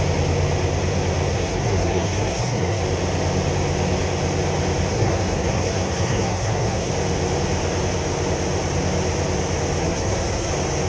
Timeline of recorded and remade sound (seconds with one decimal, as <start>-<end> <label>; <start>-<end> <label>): 0.0-1.3 recorded; 1.3-2.8 remade; 2.8-4.9 recorded; 4.9-6.9 remade; 6.9-9.8 recorded; 9.8-10.5 remade; 10.5-10.9 recorded